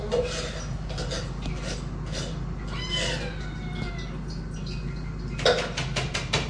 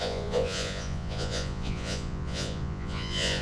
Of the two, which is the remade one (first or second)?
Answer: second